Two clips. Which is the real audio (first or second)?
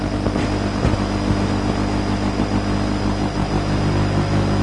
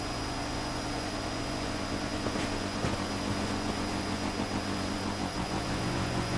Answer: first